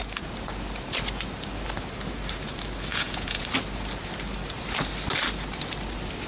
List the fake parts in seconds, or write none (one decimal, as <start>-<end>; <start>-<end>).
2.9-3.4